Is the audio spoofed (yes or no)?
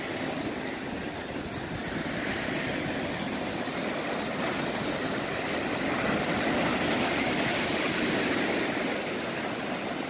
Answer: no